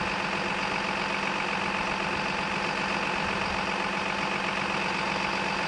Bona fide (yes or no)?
yes